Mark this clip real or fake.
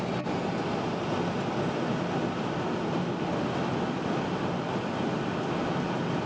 real